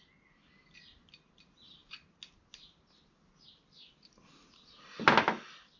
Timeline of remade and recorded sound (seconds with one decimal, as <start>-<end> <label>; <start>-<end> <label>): 0.0-5.8 recorded